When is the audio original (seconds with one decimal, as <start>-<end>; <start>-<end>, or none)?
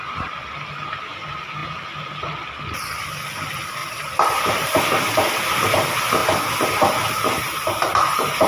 0.0-3.8; 4.8-8.5